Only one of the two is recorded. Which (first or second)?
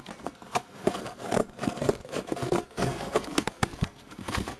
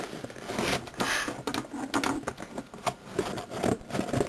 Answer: second